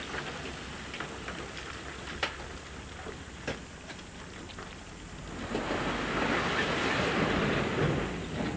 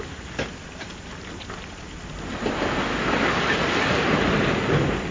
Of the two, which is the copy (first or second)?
second